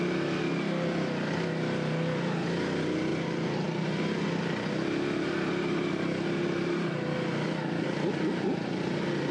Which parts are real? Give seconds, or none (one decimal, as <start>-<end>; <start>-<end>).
0.0-9.3